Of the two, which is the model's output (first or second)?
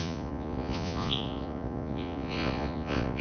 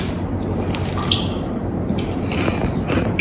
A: first